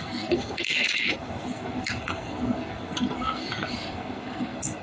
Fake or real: fake